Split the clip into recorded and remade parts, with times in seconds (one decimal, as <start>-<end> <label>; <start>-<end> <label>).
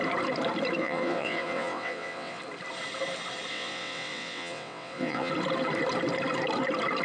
0.0-0.8 recorded; 0.8-2.4 remade; 2.4-3.5 recorded; 3.5-5.3 remade; 5.3-7.0 recorded